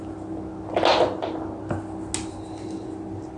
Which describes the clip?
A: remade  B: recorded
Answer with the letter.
B